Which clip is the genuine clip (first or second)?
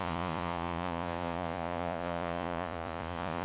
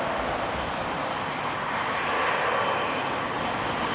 second